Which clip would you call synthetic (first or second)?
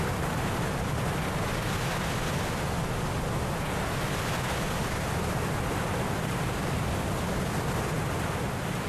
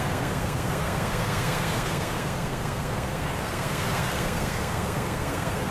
second